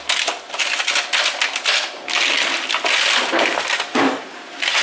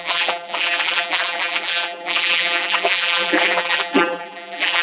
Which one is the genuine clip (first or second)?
first